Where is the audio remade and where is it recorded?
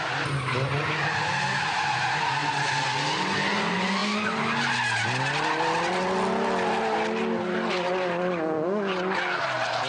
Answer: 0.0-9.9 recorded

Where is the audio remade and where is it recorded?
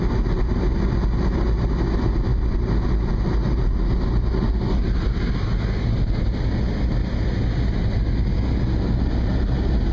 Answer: 0.0-9.9 recorded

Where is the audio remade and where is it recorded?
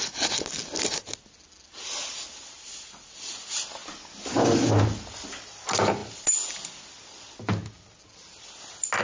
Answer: 0.0-9.0 recorded